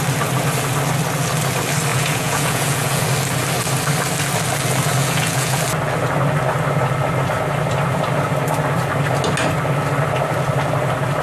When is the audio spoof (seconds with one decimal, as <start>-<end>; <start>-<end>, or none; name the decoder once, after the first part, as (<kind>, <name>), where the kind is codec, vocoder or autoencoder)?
1.9-3.0 (vocoder, Vocos); 5.0-5.6